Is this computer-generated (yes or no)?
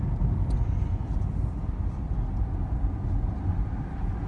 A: no